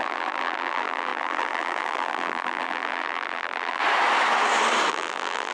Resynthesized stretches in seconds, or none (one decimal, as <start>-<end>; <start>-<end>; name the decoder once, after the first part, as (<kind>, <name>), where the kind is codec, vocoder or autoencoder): 0.0-3.8 (vocoder, BigVGAN v2); 4.9-5.5